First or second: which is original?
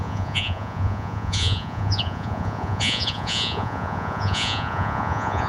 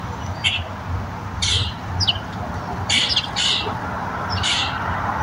second